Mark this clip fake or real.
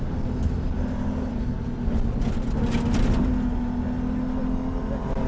real